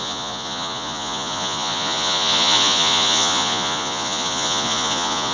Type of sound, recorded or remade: remade